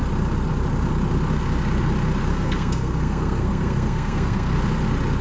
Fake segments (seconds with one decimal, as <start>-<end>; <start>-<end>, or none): 2.3-4.6